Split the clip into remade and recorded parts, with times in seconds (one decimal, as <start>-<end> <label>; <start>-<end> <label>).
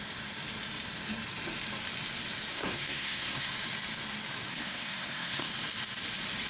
0.0-2.5 recorded; 2.5-3.5 remade; 3.5-4.5 recorded; 4.5-5.5 remade; 5.5-6.5 recorded